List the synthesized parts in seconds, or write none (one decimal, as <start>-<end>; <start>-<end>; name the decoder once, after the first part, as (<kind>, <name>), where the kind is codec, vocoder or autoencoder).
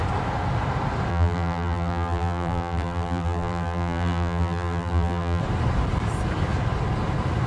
1.1-5.4 (vocoder, BigVGAN v2)